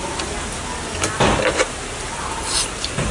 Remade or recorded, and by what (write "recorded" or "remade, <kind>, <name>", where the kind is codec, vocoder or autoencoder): recorded